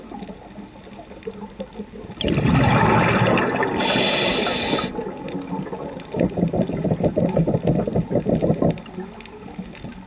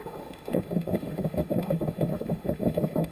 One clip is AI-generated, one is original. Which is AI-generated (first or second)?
second